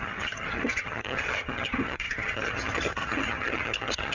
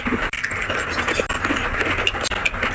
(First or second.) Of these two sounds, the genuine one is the second